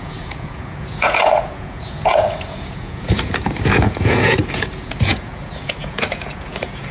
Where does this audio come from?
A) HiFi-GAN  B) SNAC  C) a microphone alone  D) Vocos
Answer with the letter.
D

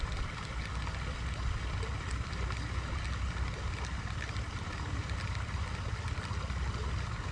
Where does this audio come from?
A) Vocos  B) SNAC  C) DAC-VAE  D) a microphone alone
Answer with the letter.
D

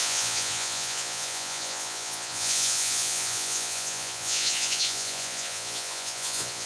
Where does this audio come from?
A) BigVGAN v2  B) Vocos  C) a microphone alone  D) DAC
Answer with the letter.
B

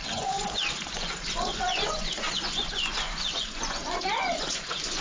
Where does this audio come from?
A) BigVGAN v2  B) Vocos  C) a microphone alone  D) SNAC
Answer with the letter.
B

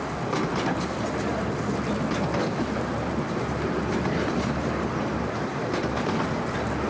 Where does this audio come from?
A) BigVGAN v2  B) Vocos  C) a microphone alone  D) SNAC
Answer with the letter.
C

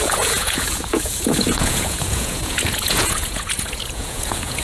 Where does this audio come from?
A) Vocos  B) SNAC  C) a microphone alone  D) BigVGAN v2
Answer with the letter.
A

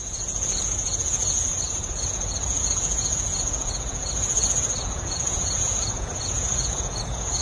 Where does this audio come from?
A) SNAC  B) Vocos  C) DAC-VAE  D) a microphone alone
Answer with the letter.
B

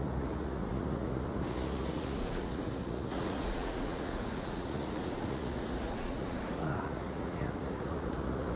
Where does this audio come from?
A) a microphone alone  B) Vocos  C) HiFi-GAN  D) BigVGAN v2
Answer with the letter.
B